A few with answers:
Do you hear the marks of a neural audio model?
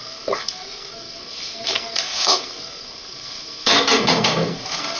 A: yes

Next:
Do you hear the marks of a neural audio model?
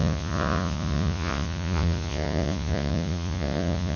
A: yes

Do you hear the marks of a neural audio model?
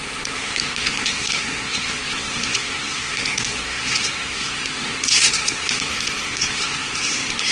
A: yes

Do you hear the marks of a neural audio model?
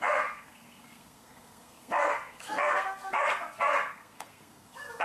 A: yes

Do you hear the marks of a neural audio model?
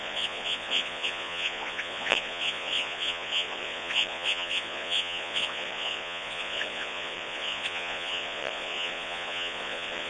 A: yes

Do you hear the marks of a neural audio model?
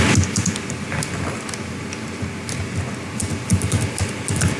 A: no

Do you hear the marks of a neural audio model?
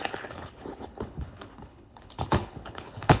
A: yes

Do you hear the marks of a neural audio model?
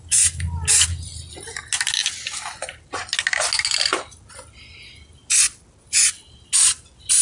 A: no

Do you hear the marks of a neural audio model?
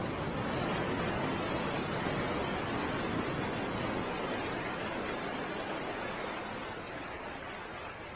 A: no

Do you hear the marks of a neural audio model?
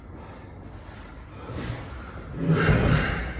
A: no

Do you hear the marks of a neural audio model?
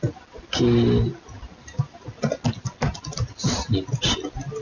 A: no